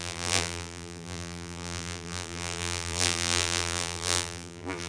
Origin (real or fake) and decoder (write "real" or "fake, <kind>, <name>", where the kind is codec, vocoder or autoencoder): fake, vocoder, BigVGAN v2